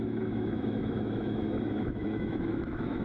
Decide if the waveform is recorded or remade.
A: remade